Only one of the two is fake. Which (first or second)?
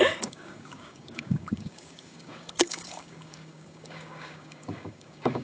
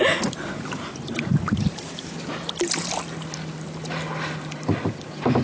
first